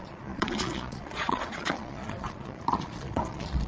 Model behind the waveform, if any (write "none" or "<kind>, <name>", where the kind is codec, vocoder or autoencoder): vocoder, Vocos